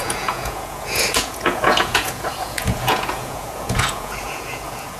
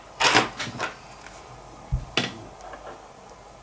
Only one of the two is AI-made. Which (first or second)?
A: first